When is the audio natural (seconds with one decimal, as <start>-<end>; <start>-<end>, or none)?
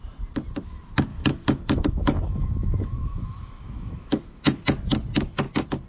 0.0-1.1; 4.6-5.9